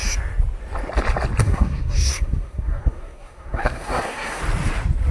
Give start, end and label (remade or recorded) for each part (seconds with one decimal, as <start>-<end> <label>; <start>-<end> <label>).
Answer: 0.0-1.4 recorded; 1.4-4.4 remade; 4.4-5.1 recorded